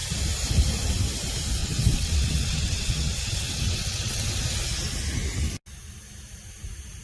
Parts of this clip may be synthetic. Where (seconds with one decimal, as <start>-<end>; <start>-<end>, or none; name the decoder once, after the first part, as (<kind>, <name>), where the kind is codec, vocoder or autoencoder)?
1.6-4.3 (vocoder, WaveNeXt)